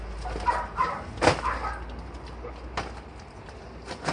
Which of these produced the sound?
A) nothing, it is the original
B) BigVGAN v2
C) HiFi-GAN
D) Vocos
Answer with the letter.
A